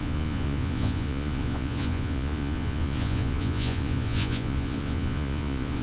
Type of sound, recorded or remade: remade